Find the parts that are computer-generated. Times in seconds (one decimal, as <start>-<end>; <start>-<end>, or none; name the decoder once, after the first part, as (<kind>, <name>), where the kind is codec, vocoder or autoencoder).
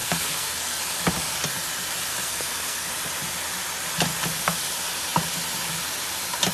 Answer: 0.0-0.8 (codec, SNAC); 2.1-2.9